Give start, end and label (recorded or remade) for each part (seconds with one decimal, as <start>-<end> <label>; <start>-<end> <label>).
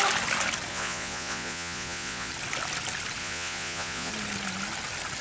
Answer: 0.0-0.7 recorded; 0.7-2.3 remade; 2.3-3.2 recorded; 3.2-4.1 remade; 4.1-5.2 recorded